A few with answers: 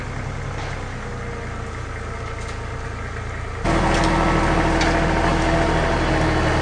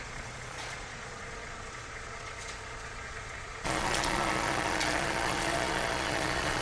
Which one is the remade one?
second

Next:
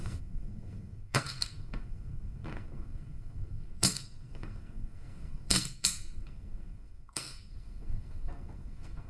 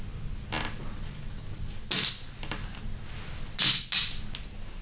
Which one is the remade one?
first